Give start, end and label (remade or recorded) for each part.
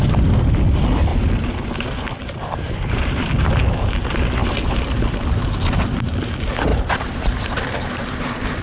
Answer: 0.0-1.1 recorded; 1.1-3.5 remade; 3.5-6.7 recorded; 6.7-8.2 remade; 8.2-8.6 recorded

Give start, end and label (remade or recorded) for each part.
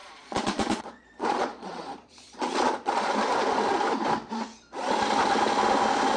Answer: 0.0-3.1 remade; 3.1-6.2 recorded